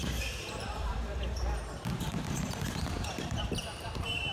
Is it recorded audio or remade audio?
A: remade